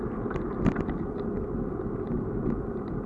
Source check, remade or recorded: remade